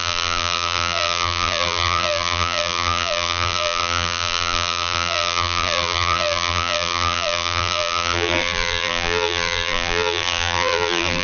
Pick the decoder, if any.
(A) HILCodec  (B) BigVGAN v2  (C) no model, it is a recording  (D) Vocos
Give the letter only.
B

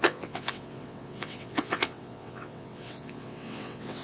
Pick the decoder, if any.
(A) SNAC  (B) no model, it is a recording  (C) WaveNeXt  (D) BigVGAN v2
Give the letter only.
C